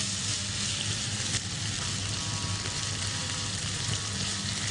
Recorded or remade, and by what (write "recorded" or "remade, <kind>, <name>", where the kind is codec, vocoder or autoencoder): recorded